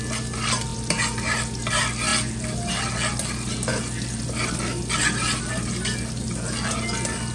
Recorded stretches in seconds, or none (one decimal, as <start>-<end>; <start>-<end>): 0.0-7.3